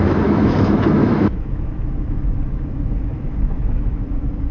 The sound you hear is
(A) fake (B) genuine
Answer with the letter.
A